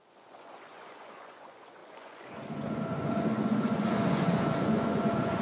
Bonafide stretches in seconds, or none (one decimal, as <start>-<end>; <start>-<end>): none